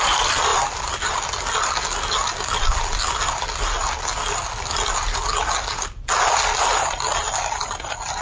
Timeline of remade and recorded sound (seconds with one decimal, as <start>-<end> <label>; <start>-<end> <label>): 0.0-8.2 recorded